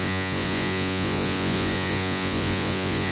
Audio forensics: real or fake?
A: fake